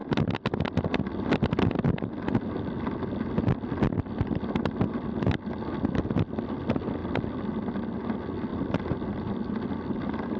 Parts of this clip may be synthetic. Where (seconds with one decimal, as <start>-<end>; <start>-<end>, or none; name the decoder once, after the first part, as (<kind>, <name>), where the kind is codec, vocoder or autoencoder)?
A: none